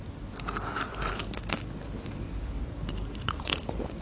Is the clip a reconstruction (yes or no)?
no